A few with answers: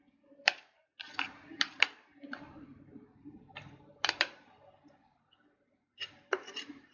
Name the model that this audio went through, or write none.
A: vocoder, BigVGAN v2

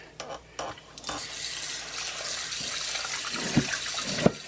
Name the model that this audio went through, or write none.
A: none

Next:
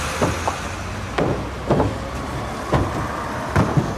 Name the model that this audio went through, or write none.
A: none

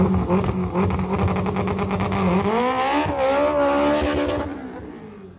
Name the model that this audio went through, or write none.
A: none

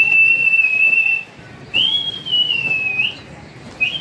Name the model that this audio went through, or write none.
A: none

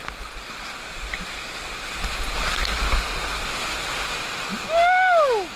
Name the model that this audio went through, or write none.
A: none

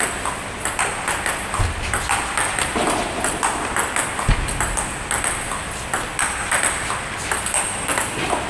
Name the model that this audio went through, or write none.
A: none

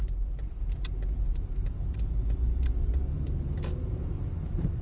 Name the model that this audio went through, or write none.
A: vocoder, BigVGAN v2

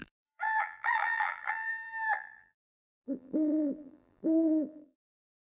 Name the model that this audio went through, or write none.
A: vocoder, BigVGAN v2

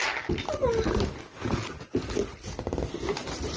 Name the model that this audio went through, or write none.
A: none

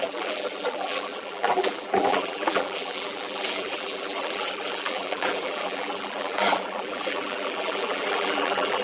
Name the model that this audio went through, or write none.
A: vocoder, BigVGAN v2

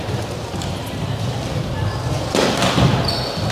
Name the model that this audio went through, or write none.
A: none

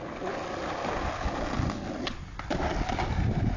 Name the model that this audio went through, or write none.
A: none